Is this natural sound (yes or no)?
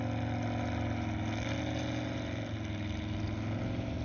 yes